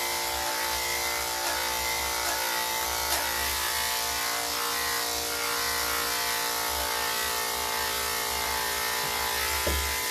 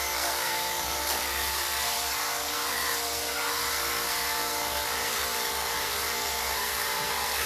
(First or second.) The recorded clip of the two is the first